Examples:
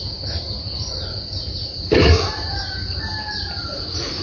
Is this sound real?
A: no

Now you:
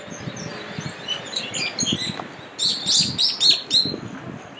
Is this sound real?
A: yes